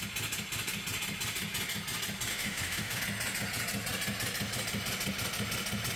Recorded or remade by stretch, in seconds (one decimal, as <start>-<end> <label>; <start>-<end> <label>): 0.0-2.3 recorded; 2.3-3.0 remade; 3.0-6.0 recorded